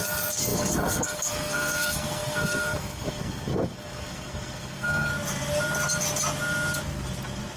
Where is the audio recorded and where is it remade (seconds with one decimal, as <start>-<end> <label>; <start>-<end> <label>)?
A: 0.0-5.1 remade; 5.1-7.6 recorded